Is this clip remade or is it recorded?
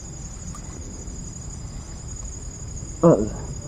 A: recorded